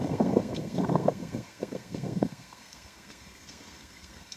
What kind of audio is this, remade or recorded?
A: remade